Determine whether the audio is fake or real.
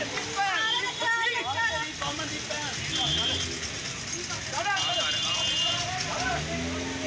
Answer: real